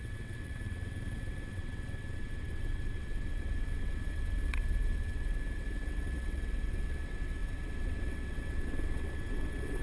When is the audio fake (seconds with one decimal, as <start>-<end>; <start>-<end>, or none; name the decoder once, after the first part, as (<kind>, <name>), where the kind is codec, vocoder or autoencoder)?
0.0-9.8 (vocoder, WaveNeXt)